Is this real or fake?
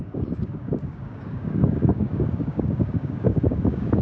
fake